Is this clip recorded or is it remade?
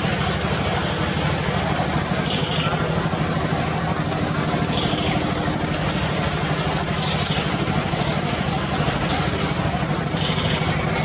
recorded